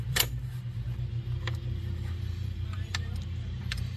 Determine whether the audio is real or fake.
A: fake